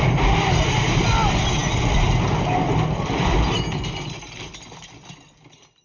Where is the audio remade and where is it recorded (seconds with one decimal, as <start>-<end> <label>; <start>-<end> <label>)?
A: 0.0-5.8 recorded